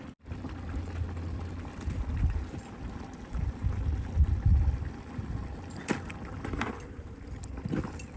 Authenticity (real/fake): real